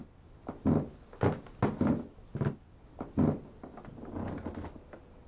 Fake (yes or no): no